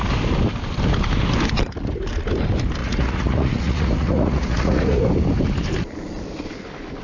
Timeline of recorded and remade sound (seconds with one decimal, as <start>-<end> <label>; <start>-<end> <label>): 0.0-2.8 recorded; 2.8-5.0 remade; 5.0-7.0 recorded